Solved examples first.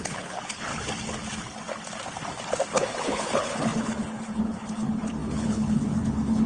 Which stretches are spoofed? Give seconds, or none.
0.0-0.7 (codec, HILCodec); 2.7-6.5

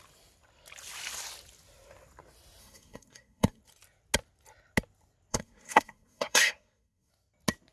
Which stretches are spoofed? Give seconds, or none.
2.6-3.6 (codec, SNAC); 5.3-7.1

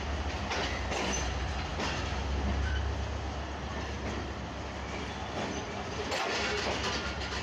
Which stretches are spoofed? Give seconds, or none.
none

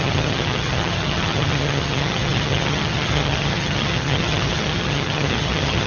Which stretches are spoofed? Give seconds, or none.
0.0-5.9 (vocoder, HiFi-GAN)

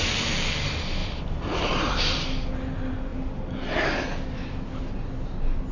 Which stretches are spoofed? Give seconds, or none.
none

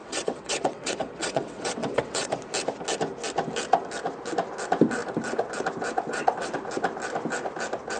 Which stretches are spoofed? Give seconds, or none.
0.0-2.3 (vocoder, WaveNeXt); 6.1-6.6

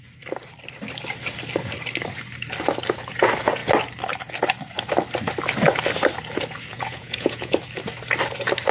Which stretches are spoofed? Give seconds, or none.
6.7-7.5 (vocoder, Vocos)

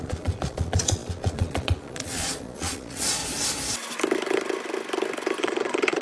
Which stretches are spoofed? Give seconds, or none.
0.0-3.2 (vocoder, Vocos); 5.4-6.0